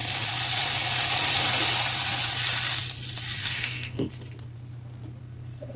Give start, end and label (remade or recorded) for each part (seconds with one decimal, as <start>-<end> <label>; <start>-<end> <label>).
0.0-3.4 recorded; 3.4-4.1 remade; 4.1-5.2 recorded; 5.2-5.8 remade